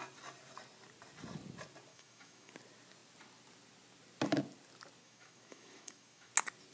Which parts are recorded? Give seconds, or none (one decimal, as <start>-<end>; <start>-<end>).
0.0-1.9; 2.5-5.0; 6.3-6.7